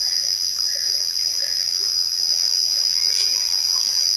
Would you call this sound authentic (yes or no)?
no